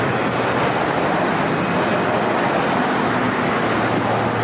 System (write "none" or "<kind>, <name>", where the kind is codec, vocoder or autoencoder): none